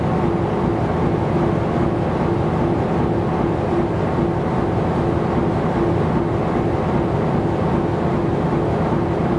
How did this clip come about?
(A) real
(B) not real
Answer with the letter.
A